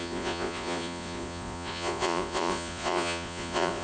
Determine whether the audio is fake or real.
fake